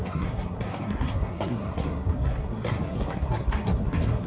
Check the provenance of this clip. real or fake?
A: fake